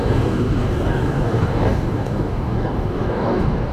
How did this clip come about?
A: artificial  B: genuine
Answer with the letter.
A